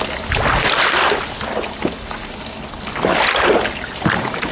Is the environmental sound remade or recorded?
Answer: recorded